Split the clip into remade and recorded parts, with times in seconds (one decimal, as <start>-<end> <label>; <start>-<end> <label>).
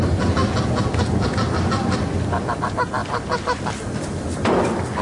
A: 0.0-5.0 recorded